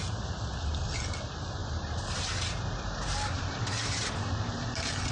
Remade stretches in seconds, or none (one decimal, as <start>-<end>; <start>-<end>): 1.6-5.1